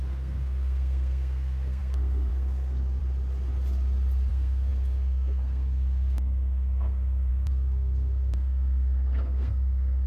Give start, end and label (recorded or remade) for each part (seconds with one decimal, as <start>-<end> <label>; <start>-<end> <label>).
0.0-3.0 remade; 3.0-4.3 recorded; 4.3-10.1 remade